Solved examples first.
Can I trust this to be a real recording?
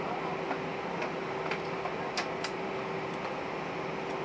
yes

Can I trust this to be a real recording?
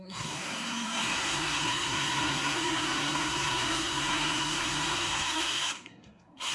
no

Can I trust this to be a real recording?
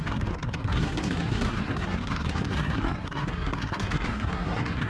no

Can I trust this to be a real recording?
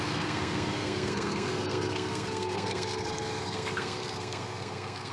no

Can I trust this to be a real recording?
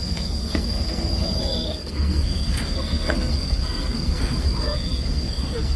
no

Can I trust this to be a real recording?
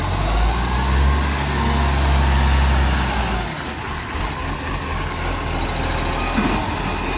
yes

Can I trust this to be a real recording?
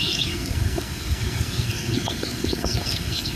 no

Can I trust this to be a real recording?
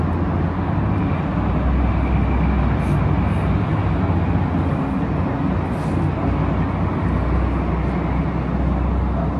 yes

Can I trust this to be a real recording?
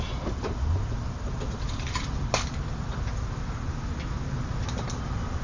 yes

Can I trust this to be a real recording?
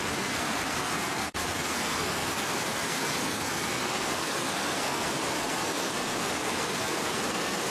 no